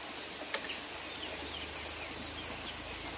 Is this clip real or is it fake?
real